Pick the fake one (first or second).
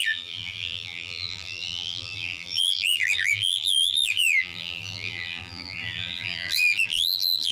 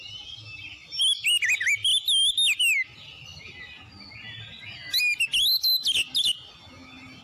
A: first